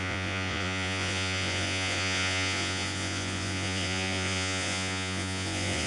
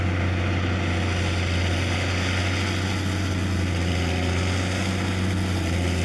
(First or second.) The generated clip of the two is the first